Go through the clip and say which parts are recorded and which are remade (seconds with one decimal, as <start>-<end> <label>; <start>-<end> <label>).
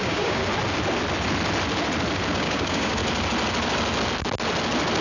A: 0.0-0.4 remade; 0.4-2.3 recorded; 2.3-3.0 remade; 3.0-5.0 recorded